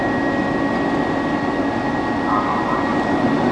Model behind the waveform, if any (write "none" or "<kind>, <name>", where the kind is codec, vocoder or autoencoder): none